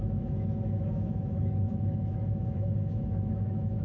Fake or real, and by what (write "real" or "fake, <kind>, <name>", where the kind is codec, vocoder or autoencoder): fake, autoencoder, DAC-VAE